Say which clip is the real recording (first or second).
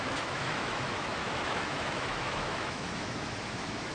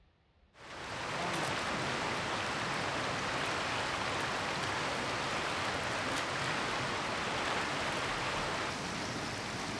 second